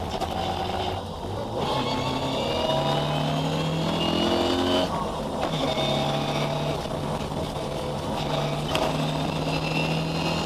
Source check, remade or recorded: recorded